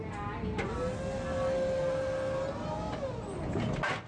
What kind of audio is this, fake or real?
real